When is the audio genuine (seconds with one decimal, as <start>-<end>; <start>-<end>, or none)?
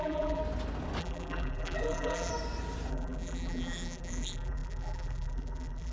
0.4-1.0; 2.3-2.9